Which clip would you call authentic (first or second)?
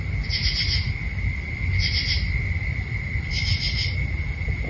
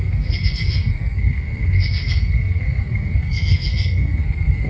first